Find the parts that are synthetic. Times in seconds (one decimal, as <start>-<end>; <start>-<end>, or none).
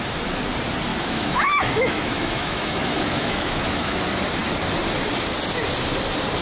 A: 0.9-4.0